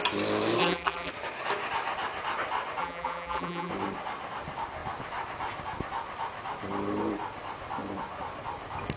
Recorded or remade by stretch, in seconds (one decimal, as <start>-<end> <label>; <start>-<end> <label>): 0.0-0.6 recorded; 0.6-1.1 remade; 1.1-2.8 recorded; 2.8-3.7 remade; 3.7-9.0 recorded